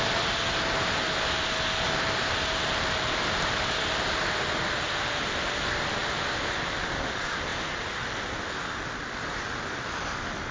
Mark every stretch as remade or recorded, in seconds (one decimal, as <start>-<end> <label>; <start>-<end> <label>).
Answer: 0.0-10.5 recorded